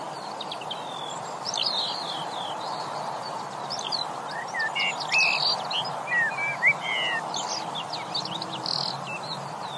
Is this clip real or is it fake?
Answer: real